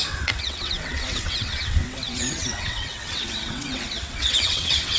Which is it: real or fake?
fake